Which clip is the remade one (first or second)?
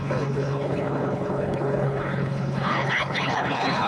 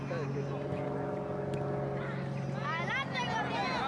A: first